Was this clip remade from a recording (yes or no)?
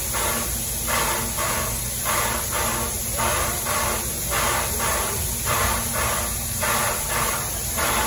no